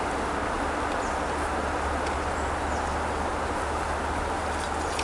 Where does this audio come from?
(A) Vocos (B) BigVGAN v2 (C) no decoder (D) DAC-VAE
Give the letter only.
C